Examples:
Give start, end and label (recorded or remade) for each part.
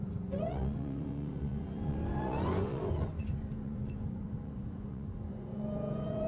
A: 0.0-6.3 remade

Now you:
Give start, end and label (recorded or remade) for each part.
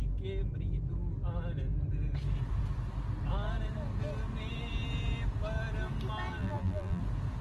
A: 0.0-6.3 recorded; 6.3-7.0 remade; 7.0-7.4 recorded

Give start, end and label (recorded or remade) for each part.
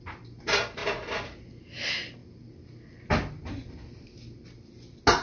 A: 0.0-5.2 recorded